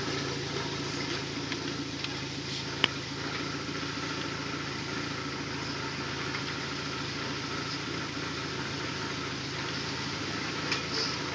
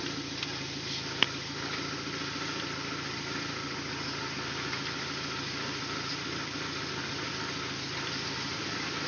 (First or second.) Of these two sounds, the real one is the first